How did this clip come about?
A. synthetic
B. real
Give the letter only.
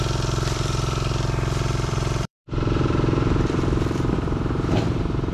A